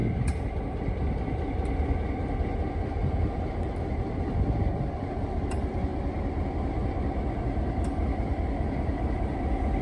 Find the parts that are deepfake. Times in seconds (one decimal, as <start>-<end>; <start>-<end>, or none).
0.0-5.9; 6.5-9.8